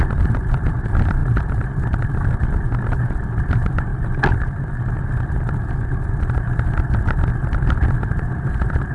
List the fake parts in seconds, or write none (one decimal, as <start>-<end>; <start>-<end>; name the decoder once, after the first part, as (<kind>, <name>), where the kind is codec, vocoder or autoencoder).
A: none